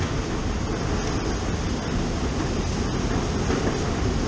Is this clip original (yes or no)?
yes